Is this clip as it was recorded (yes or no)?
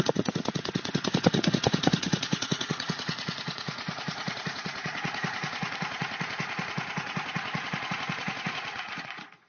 no